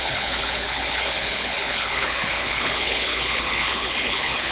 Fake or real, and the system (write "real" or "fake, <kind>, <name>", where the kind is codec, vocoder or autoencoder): fake, codec, HILCodec